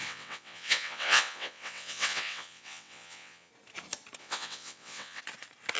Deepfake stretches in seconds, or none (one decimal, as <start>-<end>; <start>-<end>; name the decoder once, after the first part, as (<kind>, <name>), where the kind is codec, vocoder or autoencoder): 0.0-3.5 (vocoder, WaveNeXt); 4.2-5.2